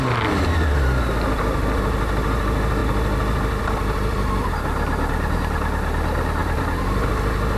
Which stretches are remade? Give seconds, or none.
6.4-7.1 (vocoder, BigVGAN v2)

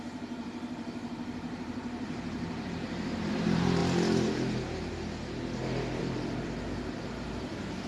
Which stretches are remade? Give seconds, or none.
0.0-3.8 (vocoder, BigVGAN v2); 6.0-7.9

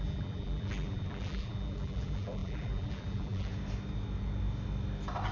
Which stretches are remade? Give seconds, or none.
0.0-3.5 (vocoder, BigVGAN v2)

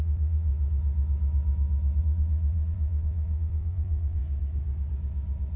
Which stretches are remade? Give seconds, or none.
0.0-0.5 (vocoder, BigVGAN v2); 2.0-4.2